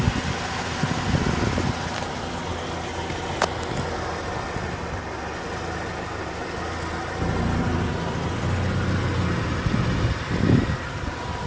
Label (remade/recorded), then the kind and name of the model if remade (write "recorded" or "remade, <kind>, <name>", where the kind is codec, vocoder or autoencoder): recorded